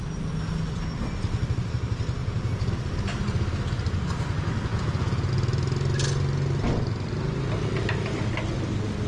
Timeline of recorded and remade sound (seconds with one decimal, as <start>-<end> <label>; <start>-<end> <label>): 0.0-2.2 recorded; 2.2-2.7 remade; 2.7-4.7 recorded; 4.7-5.3 remade; 5.3-9.1 recorded